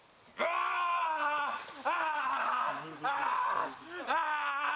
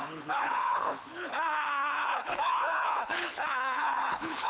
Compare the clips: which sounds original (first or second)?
first